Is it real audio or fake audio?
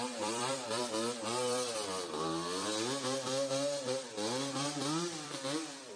fake